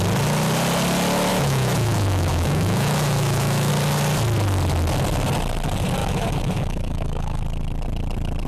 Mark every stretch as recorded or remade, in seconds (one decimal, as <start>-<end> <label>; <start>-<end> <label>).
0.0-1.3 recorded; 1.3-3.7 remade; 3.7-6.0 recorded; 6.0-7.4 remade; 7.4-8.5 recorded